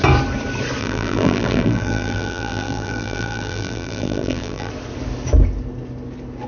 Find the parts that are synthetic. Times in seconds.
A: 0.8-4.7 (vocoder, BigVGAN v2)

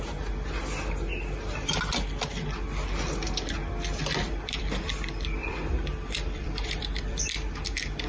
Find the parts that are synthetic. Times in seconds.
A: 4.0-4.6 (vocoder, BigVGAN v2); 5.4-8.1

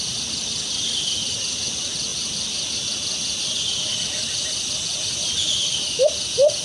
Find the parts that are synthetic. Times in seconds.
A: none

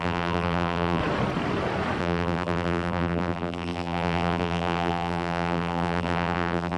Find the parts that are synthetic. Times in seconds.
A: 0.0-1.0 (vocoder, BigVGAN v2); 2.0-6.8

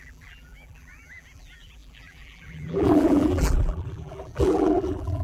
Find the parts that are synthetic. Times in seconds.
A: 0.0-5.2 (vocoder, BigVGAN v2)

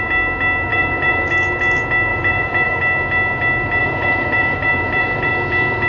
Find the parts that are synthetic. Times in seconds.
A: 0.7-1.3 (vocoder, BigVGAN v2); 2.1-2.8; 3.8-5.3

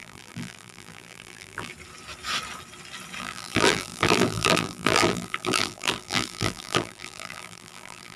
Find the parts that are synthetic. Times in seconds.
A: 0.0-1.7 (vocoder, BigVGAN v2); 3.2-8.2

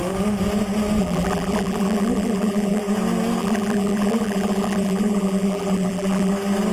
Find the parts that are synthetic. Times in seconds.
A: 1.0-2.8 (vocoder, BigVGAN v2); 3.4-6.3